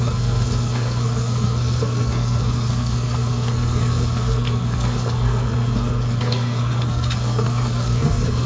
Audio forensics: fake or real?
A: fake